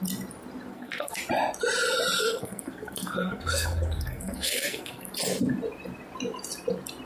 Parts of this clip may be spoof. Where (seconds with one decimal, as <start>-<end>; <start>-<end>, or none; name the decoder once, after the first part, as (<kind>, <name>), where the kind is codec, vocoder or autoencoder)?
0.7-1.2 (codec, SNAC); 2.2-5.1